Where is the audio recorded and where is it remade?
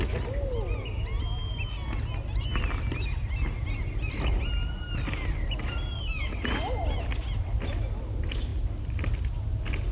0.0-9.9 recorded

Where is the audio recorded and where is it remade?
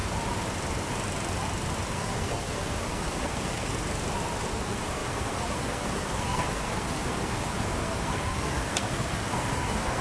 0.0-1.9 recorded; 1.9-3.7 remade; 3.7-4.5 recorded; 4.5-10.0 remade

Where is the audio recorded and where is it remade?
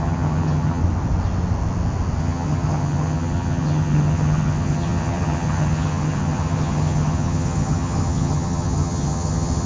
0.0-0.8 remade; 0.8-2.2 recorded; 2.2-9.7 remade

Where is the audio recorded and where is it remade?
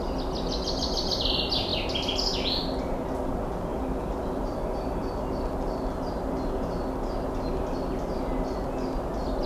0.0-9.5 recorded